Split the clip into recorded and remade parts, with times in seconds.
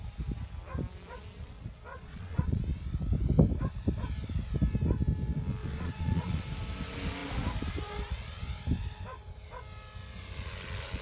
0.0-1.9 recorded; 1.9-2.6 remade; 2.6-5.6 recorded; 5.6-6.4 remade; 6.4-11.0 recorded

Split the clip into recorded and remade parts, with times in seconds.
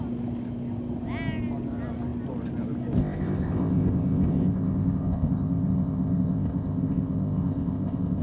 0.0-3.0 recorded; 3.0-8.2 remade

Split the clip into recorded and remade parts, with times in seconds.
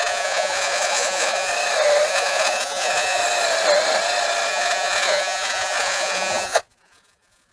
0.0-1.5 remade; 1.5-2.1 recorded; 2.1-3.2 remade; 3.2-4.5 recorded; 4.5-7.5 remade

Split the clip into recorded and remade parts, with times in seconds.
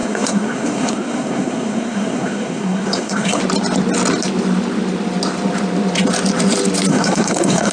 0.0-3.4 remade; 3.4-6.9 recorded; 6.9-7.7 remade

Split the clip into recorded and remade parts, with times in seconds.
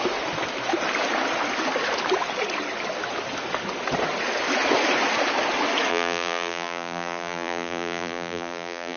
0.0-5.9 recorded; 5.9-9.0 remade